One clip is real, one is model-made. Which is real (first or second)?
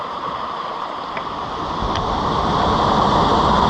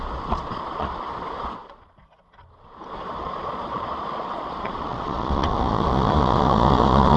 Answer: first